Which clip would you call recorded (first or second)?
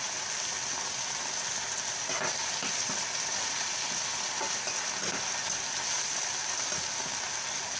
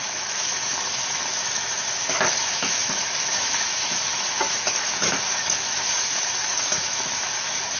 first